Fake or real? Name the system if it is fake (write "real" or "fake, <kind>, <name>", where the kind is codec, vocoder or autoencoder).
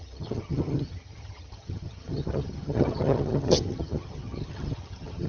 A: fake, vocoder, HiFi-GAN